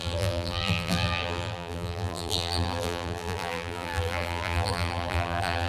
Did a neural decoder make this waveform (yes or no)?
yes